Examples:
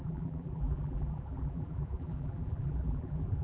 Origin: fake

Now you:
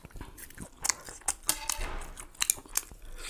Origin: real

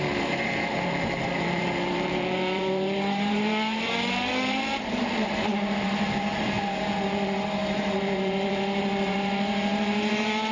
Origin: fake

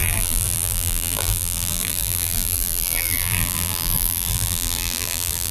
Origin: fake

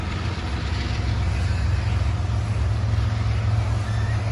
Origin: real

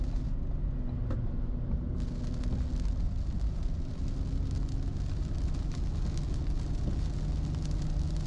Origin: real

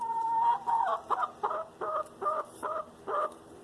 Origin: fake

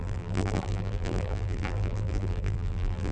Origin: fake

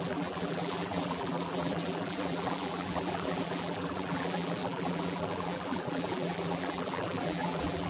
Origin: fake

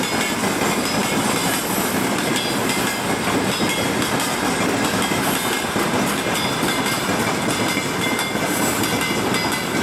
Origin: real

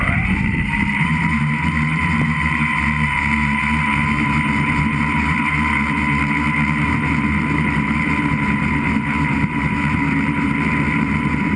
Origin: fake